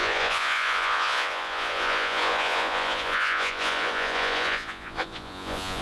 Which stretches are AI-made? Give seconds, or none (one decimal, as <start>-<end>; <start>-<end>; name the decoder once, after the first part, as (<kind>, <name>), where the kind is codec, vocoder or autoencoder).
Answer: 0.0-5.8 (vocoder, Vocos)